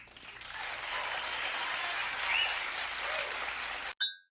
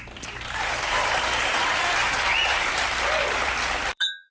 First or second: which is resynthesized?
second